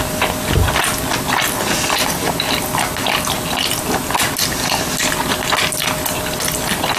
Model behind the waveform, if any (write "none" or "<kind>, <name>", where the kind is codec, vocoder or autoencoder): none